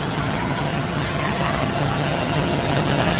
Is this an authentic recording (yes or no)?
no